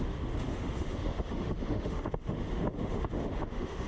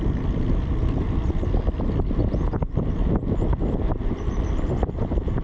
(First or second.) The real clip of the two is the second